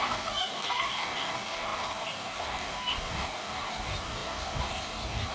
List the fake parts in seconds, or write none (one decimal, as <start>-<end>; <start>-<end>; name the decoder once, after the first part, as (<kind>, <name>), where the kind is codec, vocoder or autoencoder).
0.0-5.3 (codec, DAC)